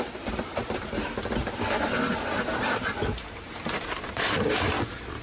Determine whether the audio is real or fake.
real